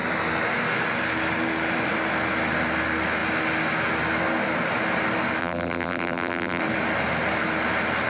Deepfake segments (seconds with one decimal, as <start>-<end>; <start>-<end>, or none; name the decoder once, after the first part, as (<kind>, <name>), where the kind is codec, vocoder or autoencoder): 5.4-6.6 (vocoder, BigVGAN v2)